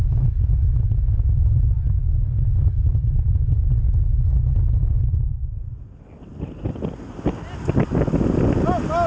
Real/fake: real